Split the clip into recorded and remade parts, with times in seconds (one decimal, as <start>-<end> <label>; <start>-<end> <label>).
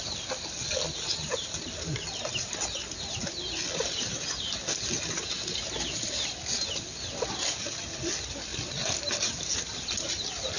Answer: 0.0-10.6 recorded